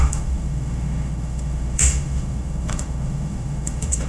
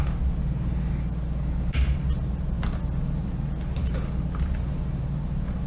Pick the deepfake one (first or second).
first